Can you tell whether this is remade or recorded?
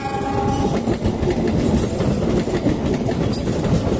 recorded